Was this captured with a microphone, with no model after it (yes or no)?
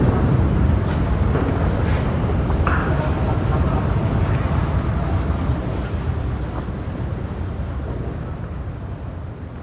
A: yes